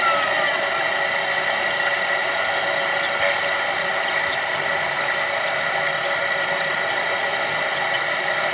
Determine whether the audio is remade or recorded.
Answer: recorded